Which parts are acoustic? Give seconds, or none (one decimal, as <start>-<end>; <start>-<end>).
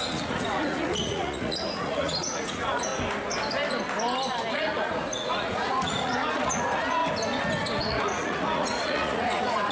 2.9-4.5; 7.0-7.8